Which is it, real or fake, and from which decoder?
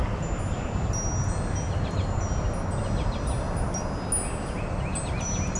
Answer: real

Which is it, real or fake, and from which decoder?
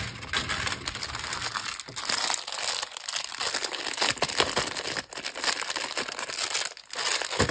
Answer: real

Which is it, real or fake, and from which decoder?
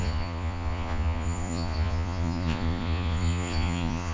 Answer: fake, vocoder, Vocos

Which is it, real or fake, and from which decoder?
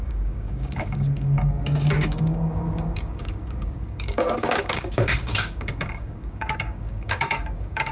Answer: fake, codec, DAC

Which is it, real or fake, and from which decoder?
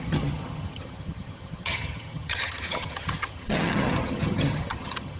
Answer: fake, vocoder, HiFi-GAN